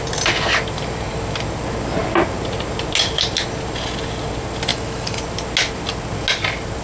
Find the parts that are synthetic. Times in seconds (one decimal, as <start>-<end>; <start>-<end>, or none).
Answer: 4.7-5.2